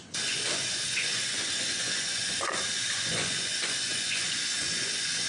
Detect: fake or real fake